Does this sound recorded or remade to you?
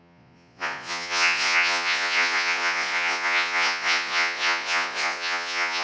remade